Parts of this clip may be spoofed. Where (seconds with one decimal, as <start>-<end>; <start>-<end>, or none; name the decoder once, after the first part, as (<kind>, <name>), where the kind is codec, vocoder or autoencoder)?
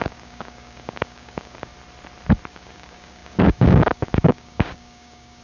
0.0-1.7 (codec, DAC); 2.5-5.4